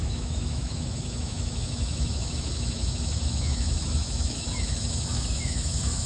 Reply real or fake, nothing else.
fake